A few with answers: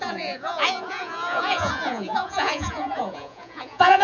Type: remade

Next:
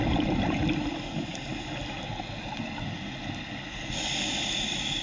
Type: recorded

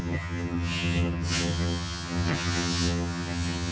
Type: remade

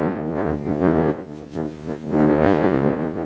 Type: remade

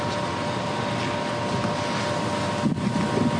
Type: recorded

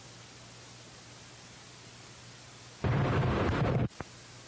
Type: recorded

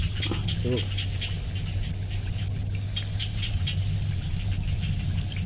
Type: recorded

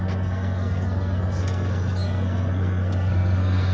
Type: remade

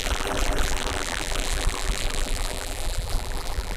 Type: remade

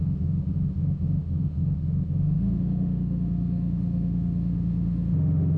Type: remade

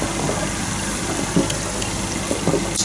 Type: recorded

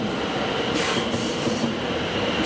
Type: recorded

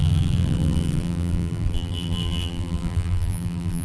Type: remade